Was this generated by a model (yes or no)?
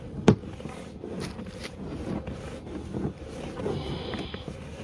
no